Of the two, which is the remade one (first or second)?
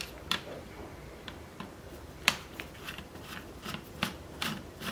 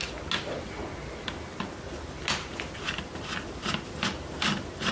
first